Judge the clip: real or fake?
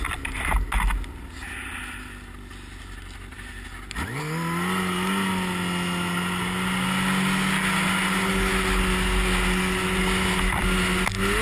real